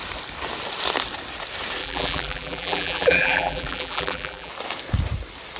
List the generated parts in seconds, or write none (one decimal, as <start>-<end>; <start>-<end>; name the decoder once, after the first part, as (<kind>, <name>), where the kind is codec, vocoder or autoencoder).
1.8-4.5 (vocoder, BigVGAN v2)